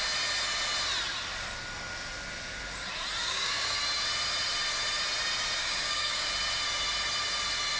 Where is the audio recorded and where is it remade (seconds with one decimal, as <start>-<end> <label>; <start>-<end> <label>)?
0.0-3.2 recorded; 3.2-3.8 remade; 3.8-5.6 recorded; 5.6-6.3 remade; 6.3-7.8 recorded